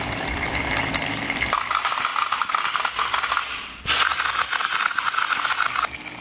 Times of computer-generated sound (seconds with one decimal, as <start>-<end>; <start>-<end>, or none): none